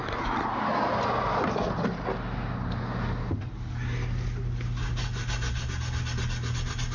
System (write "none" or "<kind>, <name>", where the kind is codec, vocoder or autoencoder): none